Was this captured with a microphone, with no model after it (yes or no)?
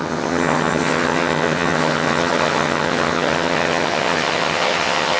no